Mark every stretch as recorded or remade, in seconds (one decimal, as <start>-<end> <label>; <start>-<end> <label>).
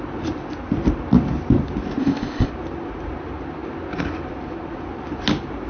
0.0-2.0 recorded; 2.0-2.5 remade; 2.5-5.7 recorded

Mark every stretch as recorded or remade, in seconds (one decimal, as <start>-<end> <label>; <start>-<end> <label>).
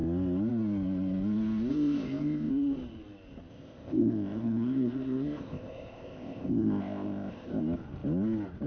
0.0-1.7 recorded; 1.7-2.5 remade; 2.5-3.5 recorded; 3.5-7.6 remade; 7.6-8.7 recorded